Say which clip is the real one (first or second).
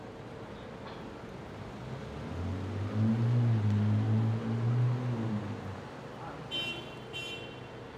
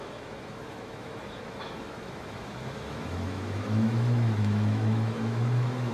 first